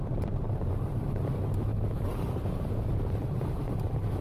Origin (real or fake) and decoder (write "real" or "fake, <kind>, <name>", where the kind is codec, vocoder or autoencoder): fake, vocoder, BigVGAN v2